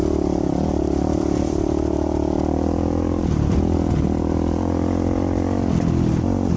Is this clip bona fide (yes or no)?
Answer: yes